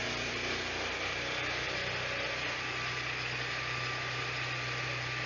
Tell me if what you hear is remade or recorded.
recorded